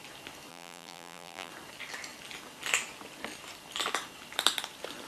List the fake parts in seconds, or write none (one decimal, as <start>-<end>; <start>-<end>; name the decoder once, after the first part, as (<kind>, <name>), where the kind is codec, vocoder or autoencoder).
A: 0.5-1.5 (vocoder, BigVGAN v2)